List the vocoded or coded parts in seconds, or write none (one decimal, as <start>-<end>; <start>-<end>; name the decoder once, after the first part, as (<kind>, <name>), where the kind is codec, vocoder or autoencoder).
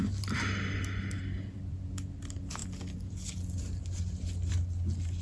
none